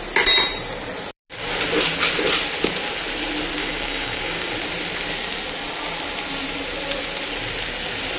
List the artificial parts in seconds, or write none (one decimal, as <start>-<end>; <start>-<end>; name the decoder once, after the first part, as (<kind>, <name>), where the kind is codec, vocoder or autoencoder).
3.6-4.5 (codec, DAC)